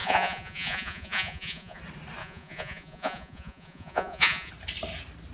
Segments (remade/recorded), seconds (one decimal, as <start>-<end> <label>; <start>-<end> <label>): 0.0-1.8 remade; 1.8-2.2 recorded; 2.2-4.5 remade; 4.5-5.3 recorded